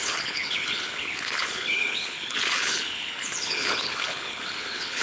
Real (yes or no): no